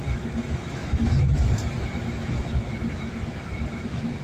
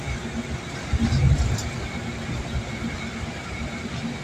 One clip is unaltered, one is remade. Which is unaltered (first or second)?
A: second